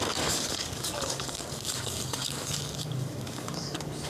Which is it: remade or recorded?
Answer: remade